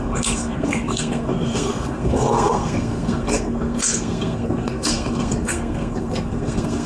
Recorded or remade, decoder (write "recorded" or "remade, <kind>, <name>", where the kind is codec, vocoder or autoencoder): remade, codec, SNAC